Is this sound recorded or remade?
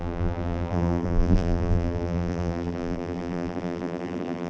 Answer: remade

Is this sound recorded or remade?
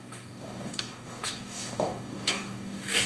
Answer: remade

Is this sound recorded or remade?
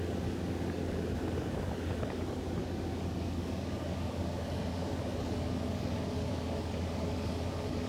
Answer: remade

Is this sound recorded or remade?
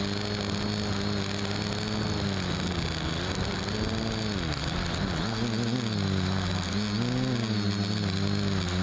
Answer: recorded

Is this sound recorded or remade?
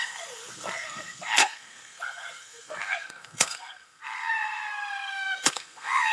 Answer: remade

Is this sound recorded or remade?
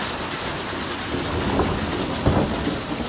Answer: recorded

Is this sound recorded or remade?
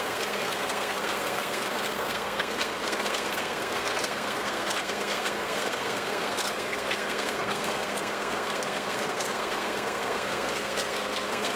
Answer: remade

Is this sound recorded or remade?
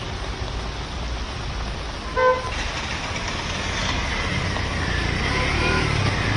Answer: recorded